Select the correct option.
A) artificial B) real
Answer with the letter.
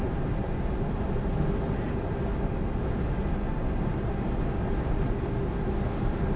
B